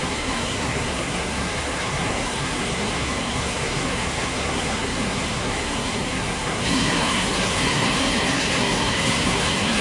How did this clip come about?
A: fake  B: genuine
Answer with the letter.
A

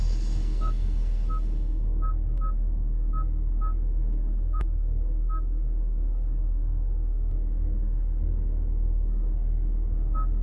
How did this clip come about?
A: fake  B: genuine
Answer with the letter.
A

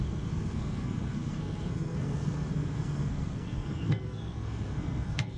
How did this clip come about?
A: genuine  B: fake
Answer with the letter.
B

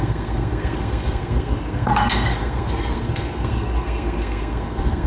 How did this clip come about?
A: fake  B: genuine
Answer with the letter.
A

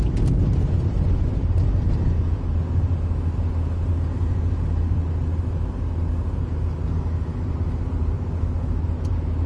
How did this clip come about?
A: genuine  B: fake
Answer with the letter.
A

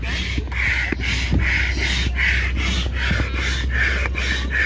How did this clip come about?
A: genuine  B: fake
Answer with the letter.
A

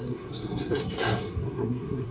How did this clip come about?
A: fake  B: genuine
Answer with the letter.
A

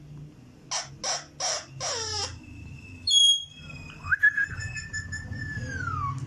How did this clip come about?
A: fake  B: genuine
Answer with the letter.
B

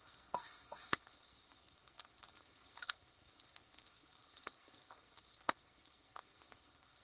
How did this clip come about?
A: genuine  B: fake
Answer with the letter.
B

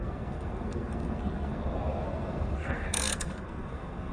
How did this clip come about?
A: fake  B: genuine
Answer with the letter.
A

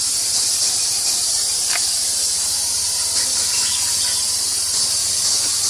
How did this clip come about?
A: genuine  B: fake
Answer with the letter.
A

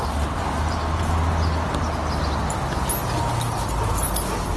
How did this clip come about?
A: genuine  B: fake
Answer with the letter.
A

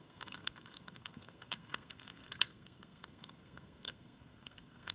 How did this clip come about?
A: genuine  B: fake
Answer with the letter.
B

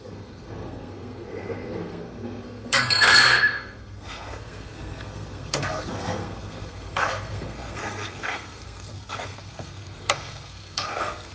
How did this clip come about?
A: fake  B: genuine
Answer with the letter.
A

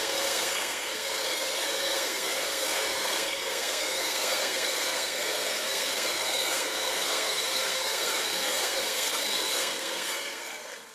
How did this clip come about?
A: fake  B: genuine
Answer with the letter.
A